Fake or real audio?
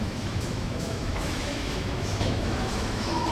fake